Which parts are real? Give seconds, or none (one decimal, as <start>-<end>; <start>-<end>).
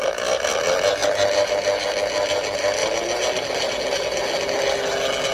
0.0-5.3